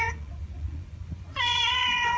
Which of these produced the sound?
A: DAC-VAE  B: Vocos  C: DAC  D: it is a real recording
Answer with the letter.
B